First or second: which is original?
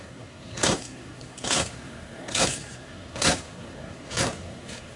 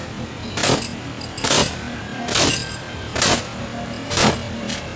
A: second